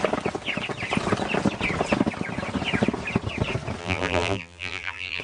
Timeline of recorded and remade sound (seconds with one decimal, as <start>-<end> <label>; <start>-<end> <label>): 0.0-3.8 recorded; 3.8-5.2 remade